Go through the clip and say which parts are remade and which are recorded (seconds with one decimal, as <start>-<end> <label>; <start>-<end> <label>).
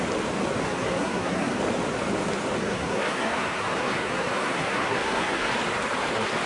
0.0-0.6 recorded; 0.6-1.6 remade; 1.6-2.6 recorded; 2.6-5.5 remade; 5.5-6.5 recorded